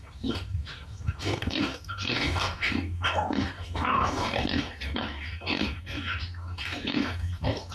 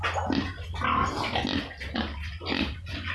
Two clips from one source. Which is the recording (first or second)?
second